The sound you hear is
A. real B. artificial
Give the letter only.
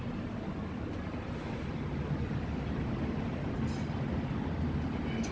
A